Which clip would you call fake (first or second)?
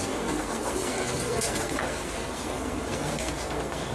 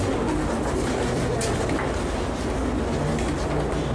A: first